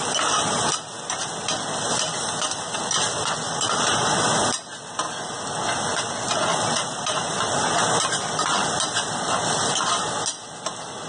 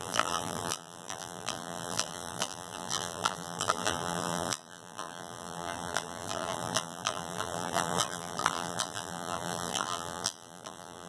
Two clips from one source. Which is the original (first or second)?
first